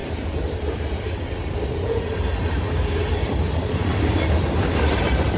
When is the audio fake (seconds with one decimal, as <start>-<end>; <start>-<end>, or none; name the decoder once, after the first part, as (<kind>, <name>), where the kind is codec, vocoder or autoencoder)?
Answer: 0.0-3.9 (vocoder, BigVGAN v2); 4.5-5.4